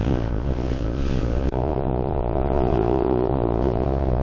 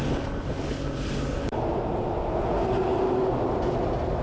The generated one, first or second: first